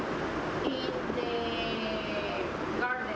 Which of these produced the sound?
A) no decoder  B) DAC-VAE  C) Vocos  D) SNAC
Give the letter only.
A